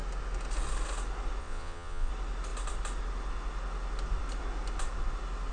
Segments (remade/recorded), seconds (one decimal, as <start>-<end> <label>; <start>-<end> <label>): 0.0-1.4 recorded; 1.4-2.1 remade; 2.1-5.5 recorded